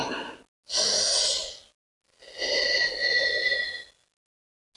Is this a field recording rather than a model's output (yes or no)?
yes